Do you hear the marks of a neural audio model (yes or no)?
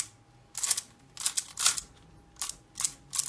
no